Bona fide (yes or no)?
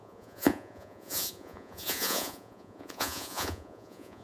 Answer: no